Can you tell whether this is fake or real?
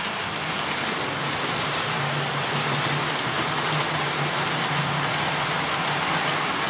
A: real